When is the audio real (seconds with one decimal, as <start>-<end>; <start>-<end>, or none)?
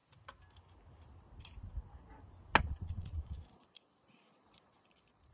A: 0.0-2.6